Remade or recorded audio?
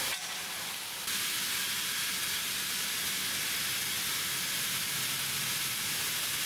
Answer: recorded